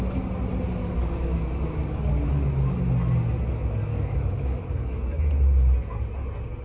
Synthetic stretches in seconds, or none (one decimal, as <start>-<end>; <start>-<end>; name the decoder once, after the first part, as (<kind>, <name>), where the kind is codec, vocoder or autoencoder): 0.8-2.1 (codec, DAC); 3.9-5.2